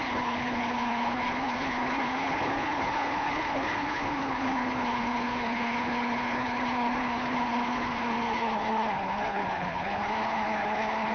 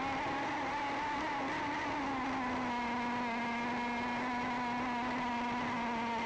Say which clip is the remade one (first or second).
first